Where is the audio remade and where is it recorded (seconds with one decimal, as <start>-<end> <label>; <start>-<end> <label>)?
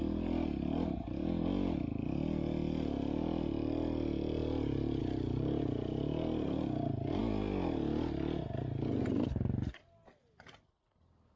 0.0-11.4 recorded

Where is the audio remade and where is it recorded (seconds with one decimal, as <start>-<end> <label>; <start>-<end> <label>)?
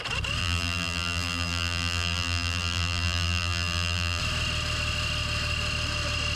0.0-0.4 recorded; 0.4-4.2 remade; 4.2-6.4 recorded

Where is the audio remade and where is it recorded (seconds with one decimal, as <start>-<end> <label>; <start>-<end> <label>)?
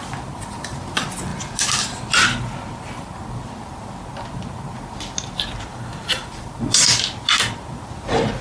0.0-5.7 recorded; 5.7-6.6 remade; 6.6-8.4 recorded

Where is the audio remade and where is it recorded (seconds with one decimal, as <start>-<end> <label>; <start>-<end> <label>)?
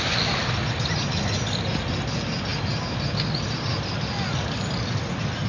0.0-5.5 recorded